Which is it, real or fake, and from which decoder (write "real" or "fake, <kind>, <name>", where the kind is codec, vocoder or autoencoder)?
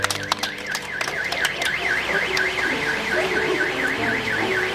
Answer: fake, vocoder, BigVGAN v2